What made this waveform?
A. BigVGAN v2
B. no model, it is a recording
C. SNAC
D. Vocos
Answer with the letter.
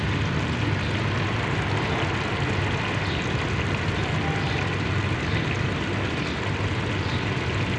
B